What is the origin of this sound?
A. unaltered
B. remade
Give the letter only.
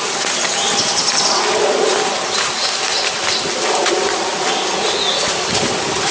A